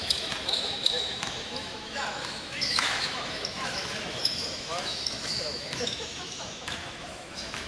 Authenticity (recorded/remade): remade